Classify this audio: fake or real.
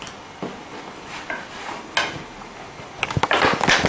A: real